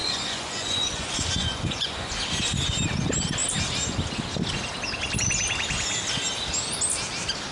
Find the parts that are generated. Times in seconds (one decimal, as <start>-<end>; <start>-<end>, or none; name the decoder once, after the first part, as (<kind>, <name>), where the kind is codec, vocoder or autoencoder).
0.0-2.1 (vocoder, Vocos)